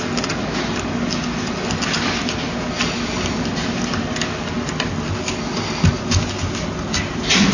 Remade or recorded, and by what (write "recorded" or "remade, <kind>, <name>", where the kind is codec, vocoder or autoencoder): recorded